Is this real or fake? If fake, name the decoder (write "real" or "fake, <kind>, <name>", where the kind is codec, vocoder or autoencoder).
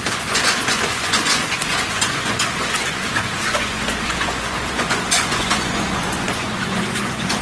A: fake, vocoder, Vocos